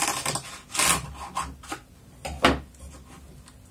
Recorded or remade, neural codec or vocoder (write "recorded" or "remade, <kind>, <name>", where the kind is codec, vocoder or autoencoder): recorded